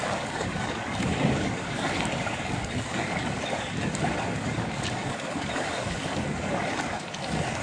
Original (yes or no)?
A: no